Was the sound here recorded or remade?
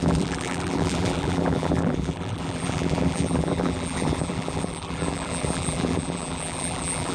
remade